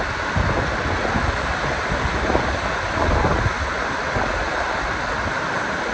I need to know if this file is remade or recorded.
recorded